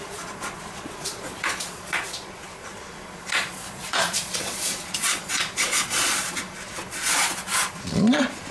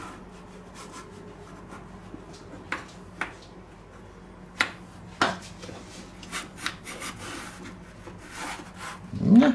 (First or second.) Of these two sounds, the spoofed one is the first